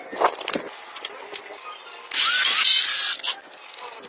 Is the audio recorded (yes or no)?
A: no